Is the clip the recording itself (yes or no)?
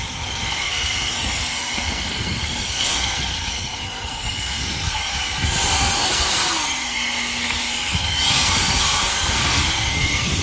no